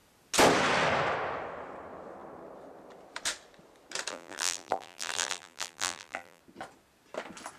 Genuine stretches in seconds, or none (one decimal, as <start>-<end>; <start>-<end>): 0.0-4.1; 6.4-7.6